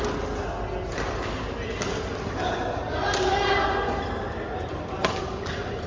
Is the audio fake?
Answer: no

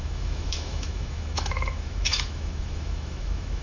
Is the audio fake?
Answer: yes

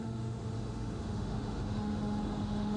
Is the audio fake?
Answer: yes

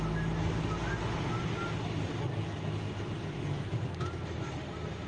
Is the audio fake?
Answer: no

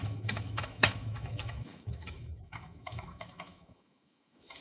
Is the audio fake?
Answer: yes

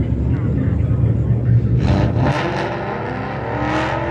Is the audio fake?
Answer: no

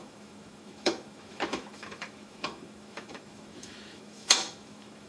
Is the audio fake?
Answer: yes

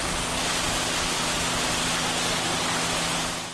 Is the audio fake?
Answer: no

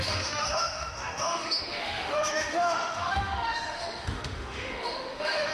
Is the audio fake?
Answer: yes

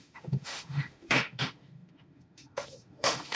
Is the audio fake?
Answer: yes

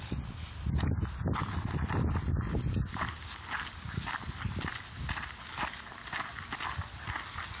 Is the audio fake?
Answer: no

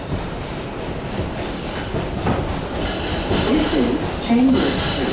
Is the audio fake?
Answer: no